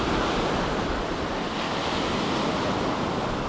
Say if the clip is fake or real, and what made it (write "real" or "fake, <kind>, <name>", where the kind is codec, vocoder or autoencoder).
real